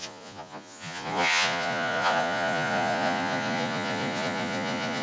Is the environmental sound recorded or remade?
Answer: remade